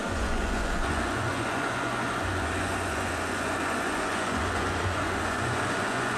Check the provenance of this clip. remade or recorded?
remade